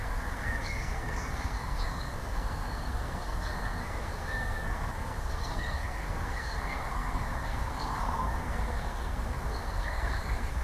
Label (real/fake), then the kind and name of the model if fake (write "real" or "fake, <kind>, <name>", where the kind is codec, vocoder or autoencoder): fake, codec, SNAC